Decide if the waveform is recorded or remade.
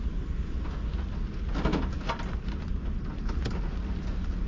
recorded